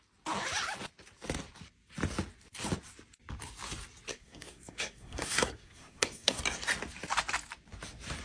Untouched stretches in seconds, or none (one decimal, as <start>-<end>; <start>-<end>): 0.0-4.1; 6.4-8.2